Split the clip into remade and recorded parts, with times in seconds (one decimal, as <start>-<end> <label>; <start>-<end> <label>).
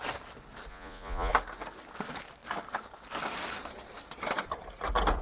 0.0-0.7 recorded; 0.7-1.3 remade; 1.3-5.2 recorded